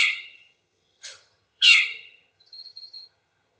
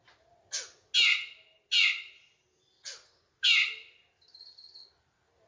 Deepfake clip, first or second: first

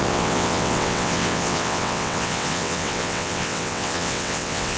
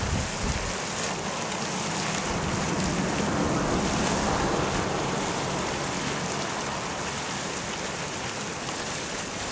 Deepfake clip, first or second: first